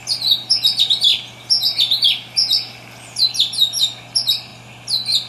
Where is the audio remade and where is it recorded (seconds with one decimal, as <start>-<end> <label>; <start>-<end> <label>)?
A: 0.0-5.3 recorded